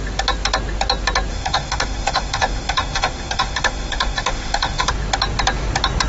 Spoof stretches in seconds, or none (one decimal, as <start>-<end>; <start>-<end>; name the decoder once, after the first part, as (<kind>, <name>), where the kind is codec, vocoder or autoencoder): 1.3-4.9 (autoencoder, DAC-VAE)